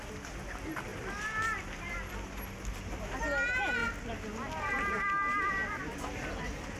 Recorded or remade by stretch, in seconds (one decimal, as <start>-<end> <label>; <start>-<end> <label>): 0.0-6.8 recorded